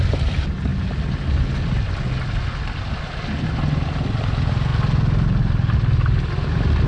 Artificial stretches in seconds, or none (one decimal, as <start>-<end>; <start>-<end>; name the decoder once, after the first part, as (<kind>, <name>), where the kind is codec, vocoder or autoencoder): none